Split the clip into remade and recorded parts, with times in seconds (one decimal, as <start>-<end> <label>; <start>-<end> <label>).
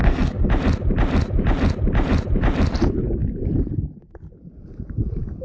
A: 0.0-0.5 remade; 0.5-5.4 recorded